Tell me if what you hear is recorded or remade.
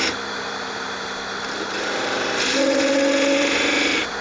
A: remade